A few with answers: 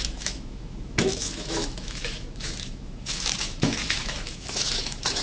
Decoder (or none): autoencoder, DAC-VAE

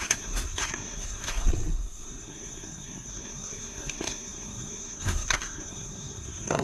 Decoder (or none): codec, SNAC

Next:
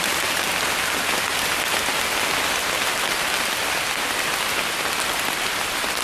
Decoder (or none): none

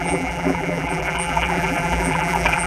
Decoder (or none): vocoder, BigVGAN v2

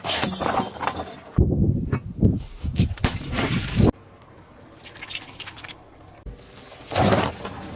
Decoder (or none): none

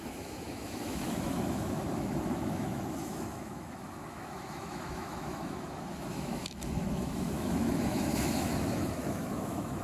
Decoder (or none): autoencoder, DAC-VAE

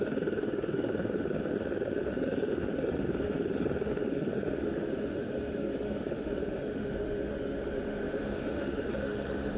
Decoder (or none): autoencoder, DAC-VAE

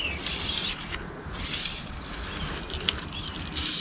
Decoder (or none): none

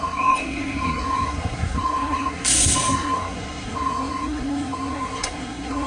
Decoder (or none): codec, SNAC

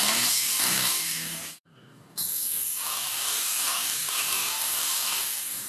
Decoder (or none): codec, DAC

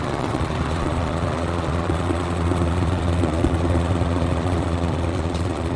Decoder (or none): vocoder, Vocos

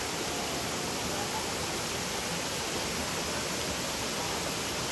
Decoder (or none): none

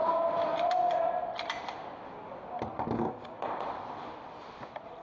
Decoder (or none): none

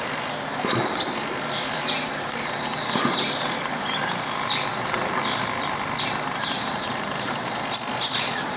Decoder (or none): vocoder, BigVGAN v2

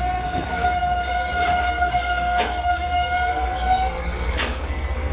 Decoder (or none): codec, SNAC